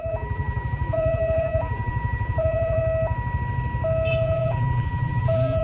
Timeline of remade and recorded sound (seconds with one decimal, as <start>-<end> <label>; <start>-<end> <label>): 0.0-2.8 remade; 2.8-4.1 recorded; 4.1-5.6 remade